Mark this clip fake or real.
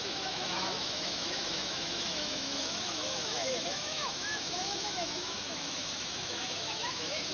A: fake